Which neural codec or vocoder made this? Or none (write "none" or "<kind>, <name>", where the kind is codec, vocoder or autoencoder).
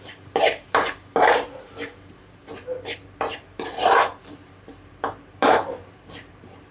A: vocoder, BigVGAN v2